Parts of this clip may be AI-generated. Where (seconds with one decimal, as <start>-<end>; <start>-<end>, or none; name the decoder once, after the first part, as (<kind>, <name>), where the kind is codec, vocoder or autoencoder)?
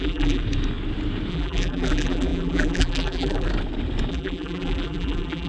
0.0-0.4 (vocoder, BigVGAN v2); 1.3-3.5; 4.1-5.5